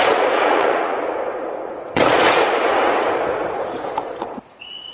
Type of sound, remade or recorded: remade